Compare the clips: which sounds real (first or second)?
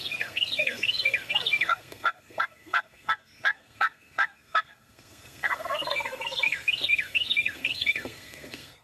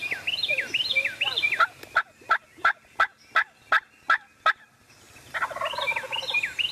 second